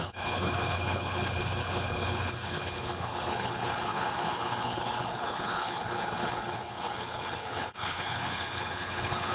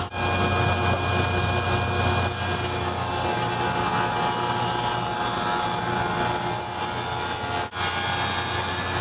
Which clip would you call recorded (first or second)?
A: second